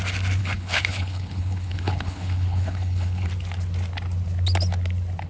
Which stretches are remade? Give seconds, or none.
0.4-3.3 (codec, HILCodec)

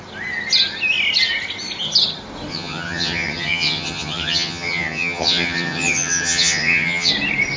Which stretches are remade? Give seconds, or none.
2.5-7.1 (vocoder, HiFi-GAN)

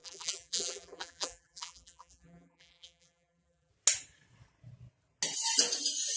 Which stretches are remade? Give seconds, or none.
0.0-3.7 (vocoder, BigVGAN v2)